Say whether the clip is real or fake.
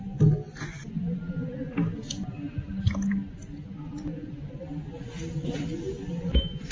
real